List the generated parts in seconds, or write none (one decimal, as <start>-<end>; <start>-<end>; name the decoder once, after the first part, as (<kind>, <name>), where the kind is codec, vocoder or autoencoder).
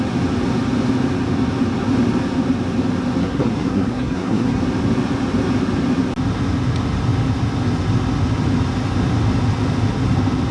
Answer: 3.2-4.6 (codec, SNAC)